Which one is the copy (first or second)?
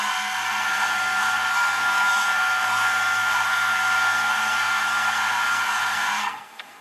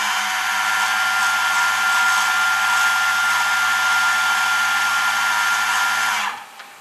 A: first